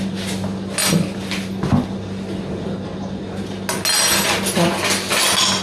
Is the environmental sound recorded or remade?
recorded